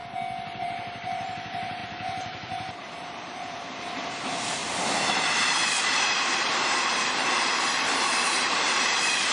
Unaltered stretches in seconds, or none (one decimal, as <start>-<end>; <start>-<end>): 0.0-0.6; 4.6-6.8